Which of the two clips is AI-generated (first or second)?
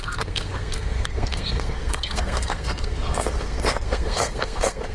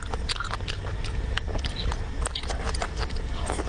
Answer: first